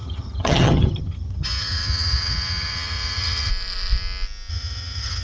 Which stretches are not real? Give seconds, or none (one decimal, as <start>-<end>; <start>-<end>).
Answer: 0.0-3.5; 4.5-5.2